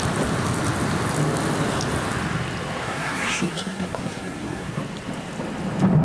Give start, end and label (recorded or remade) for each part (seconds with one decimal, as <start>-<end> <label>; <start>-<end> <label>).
0.0-2.8 recorded; 2.8-4.8 remade; 4.8-6.0 recorded